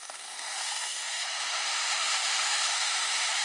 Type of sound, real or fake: fake